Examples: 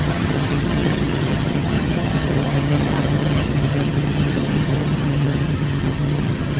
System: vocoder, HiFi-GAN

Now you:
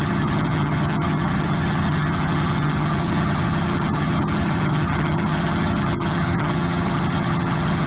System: vocoder, HiFi-GAN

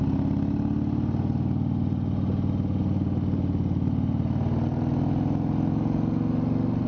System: none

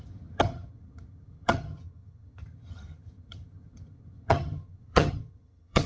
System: vocoder, HiFi-GAN